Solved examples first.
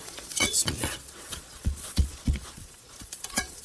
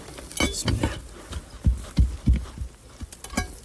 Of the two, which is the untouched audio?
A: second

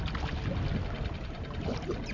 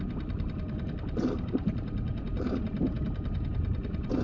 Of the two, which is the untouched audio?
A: first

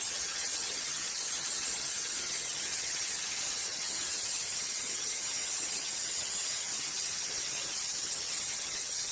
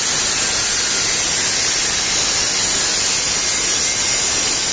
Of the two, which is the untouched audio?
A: second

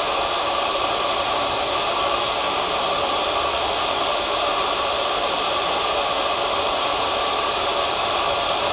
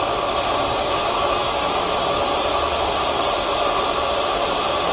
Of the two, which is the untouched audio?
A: second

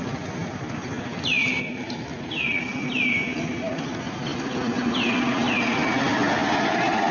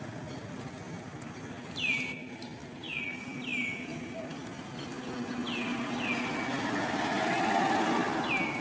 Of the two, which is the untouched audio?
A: second